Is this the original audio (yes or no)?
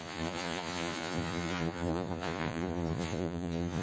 no